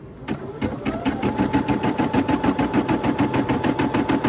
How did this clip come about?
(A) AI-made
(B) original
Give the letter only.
A